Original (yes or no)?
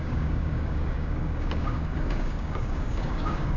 no